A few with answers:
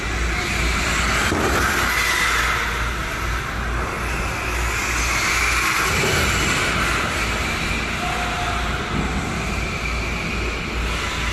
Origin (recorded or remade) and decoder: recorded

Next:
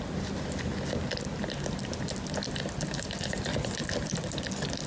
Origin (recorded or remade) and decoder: recorded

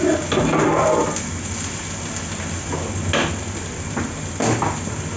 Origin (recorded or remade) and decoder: recorded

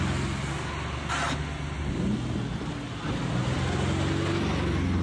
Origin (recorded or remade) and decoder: recorded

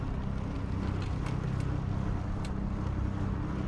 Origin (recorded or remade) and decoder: recorded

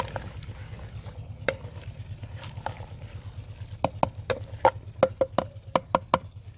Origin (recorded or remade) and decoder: recorded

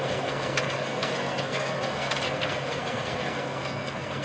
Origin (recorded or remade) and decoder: remade, codec, SNAC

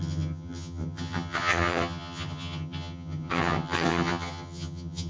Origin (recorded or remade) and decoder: remade, vocoder, HiFi-GAN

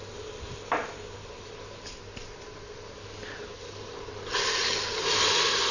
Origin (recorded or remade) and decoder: recorded